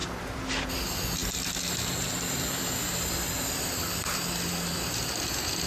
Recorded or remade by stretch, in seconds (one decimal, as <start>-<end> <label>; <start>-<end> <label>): 0.0-5.7 recorded